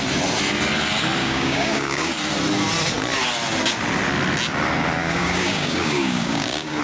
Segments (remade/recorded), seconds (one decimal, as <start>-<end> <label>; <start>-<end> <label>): 0.0-1.2 recorded; 1.2-2.1 remade; 2.1-5.0 recorded; 5.0-6.8 remade